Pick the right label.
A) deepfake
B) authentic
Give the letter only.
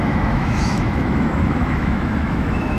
A